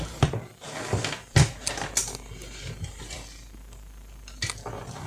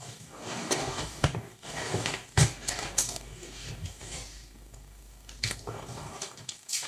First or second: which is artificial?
second